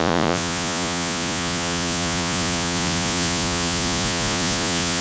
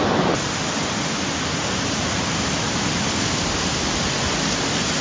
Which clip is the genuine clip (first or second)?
second